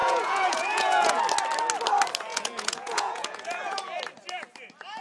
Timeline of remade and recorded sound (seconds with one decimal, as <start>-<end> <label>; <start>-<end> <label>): 0.0-1.2 remade; 1.2-2.3 recorded; 2.3-4.0 remade; 4.0-5.0 recorded